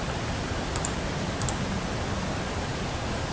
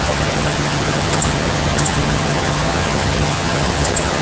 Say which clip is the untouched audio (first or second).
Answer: first